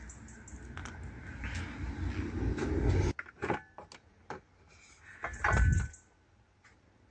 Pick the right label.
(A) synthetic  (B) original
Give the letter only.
B